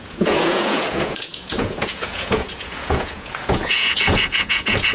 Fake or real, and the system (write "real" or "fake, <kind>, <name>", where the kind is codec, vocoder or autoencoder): fake, vocoder, Vocos